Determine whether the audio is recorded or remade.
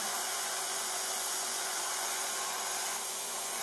remade